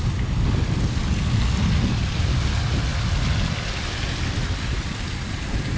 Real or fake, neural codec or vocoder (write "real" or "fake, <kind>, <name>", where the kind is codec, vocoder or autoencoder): real